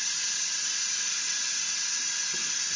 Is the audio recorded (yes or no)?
yes